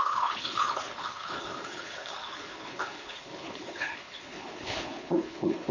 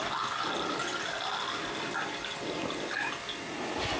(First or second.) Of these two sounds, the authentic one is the second